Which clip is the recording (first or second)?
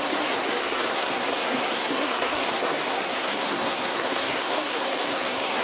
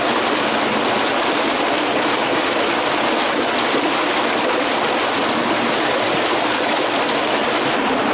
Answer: second